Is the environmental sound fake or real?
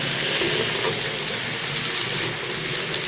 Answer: real